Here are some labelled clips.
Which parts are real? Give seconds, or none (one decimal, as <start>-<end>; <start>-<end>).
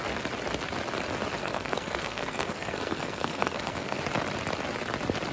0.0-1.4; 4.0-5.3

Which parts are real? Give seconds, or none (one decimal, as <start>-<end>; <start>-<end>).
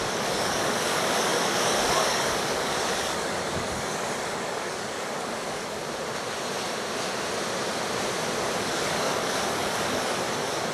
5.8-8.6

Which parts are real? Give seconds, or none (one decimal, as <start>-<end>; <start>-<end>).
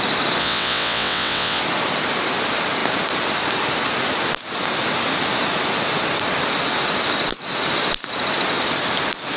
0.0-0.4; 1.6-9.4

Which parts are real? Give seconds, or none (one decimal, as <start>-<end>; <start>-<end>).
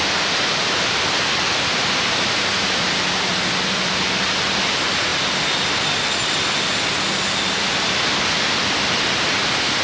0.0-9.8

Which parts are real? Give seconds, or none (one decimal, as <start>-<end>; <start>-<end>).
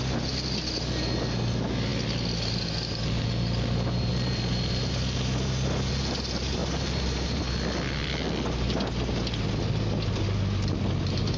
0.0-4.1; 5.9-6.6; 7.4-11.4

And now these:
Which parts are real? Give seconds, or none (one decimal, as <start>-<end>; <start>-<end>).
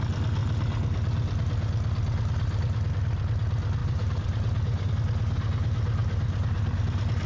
0.0-3.8; 4.9-7.3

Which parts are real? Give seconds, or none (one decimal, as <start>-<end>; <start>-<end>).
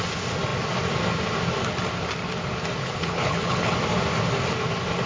0.0-2.8; 3.7-5.1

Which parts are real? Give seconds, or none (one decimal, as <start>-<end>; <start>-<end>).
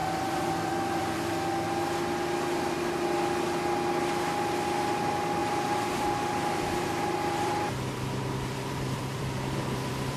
1.3-5.4